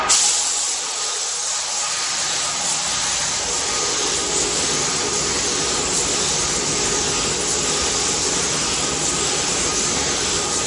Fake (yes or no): no